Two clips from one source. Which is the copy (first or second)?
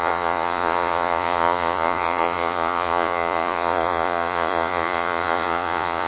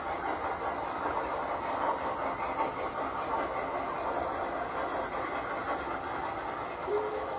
first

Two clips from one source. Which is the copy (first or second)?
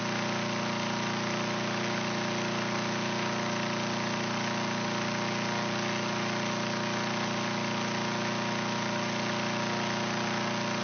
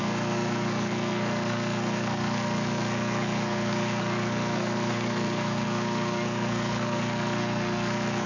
second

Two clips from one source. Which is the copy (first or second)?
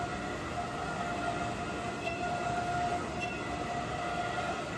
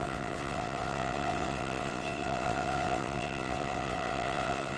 second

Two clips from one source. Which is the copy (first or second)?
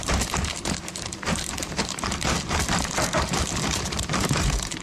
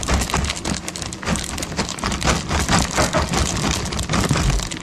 first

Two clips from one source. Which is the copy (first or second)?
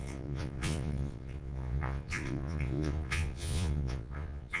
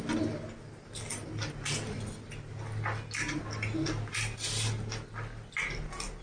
first